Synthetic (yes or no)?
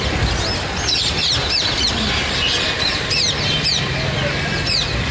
no